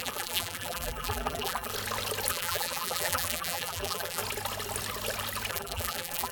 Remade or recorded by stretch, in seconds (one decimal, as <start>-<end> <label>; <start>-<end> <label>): 0.0-1.7 remade; 1.7-2.3 recorded; 2.3-4.2 remade; 4.2-5.5 recorded; 5.5-6.3 remade